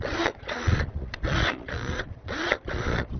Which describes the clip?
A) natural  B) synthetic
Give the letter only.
B